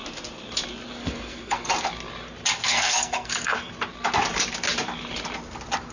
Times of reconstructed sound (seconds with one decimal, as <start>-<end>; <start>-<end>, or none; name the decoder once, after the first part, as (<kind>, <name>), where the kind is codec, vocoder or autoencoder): 1.0-1.7 (codec, SNAC); 2.6-3.7